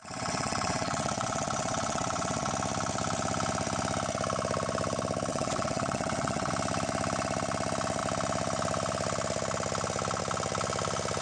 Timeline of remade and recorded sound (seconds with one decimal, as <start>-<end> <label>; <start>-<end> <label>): 0.0-2.5 remade; 2.5-5.3 recorded; 5.3-6.5 remade; 6.5-11.2 recorded